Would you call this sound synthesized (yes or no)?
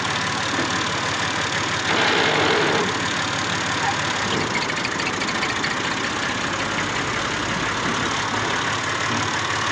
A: no